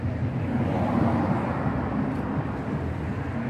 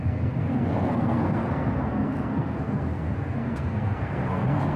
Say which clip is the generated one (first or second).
second